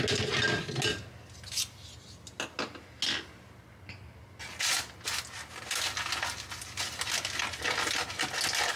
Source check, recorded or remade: recorded